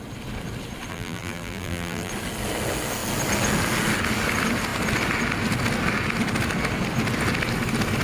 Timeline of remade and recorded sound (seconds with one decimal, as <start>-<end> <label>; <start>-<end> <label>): 0.0-0.9 recorded; 0.9-2.1 remade; 2.1-8.0 recorded